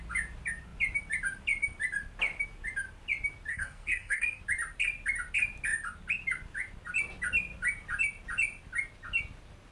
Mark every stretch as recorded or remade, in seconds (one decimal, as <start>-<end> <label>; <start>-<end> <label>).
0.0-3.5 recorded; 3.5-4.4 remade; 4.4-9.7 recorded